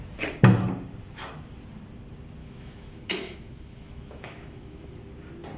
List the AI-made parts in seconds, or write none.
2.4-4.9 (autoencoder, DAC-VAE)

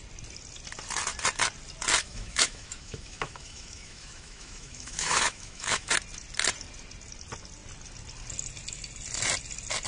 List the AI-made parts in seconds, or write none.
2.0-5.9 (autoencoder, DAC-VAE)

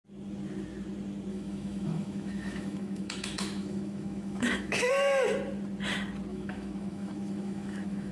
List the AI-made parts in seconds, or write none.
1.3-4.9 (autoencoder, DAC-VAE); 6.3-8.1

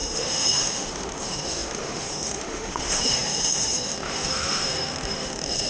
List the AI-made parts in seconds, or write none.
0.0-5.7 (autoencoder, DAC-VAE)

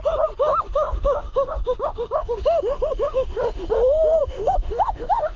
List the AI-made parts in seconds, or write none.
0.5-3.7 (autoencoder, DAC-VAE); 4.2-5.4

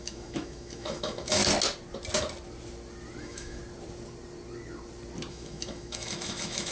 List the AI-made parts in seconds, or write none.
0.0-1.4 (autoencoder, DAC-VAE); 3.2-3.6; 5.3-6.7